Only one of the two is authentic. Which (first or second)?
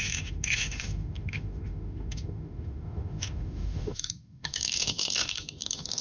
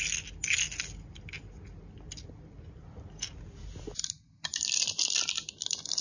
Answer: second